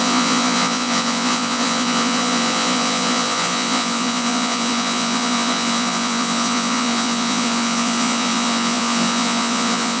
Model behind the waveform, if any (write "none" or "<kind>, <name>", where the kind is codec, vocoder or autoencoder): vocoder, Vocos